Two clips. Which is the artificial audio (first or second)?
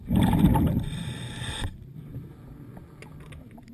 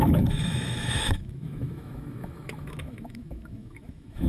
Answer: second